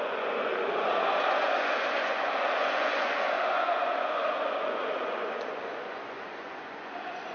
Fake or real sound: fake